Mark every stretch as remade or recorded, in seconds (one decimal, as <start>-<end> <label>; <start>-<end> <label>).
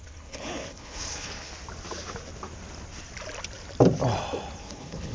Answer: 0.0-1.5 remade; 1.5-4.6 recorded; 4.6-5.1 remade